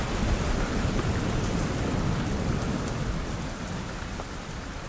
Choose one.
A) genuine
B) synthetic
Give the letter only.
A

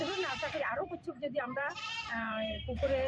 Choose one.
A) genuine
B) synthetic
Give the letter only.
B